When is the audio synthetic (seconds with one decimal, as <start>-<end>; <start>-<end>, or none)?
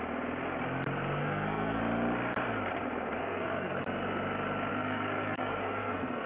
1.2-1.8; 3.2-3.8; 4.7-6.3